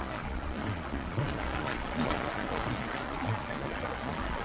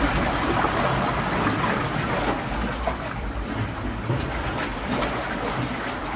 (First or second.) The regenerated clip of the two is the first